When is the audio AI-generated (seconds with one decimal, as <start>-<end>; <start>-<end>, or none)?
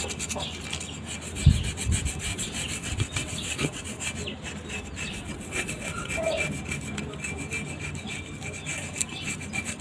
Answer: 2.3-3.8; 5.1-6.1